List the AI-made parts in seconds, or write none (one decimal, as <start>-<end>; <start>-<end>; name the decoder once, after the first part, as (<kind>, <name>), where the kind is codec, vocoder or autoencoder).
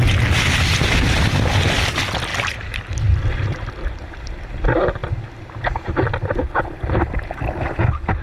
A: none